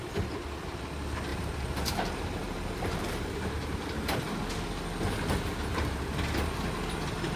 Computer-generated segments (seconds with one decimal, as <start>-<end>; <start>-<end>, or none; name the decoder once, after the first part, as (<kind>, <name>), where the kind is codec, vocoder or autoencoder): 1.3-4.2 (vocoder, BigVGAN v2); 5.7-6.7